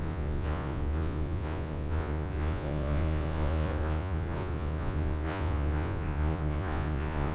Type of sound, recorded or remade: remade